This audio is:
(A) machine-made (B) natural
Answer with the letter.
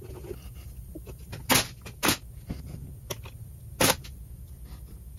B